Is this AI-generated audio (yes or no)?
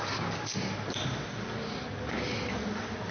no